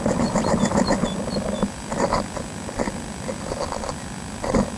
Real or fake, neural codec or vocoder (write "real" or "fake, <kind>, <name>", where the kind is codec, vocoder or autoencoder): real